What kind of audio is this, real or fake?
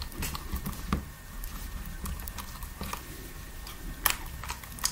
real